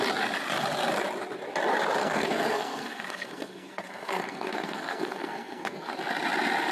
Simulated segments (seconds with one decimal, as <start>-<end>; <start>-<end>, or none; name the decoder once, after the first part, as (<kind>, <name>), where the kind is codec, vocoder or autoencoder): 2.0-5.9 (codec, SNAC)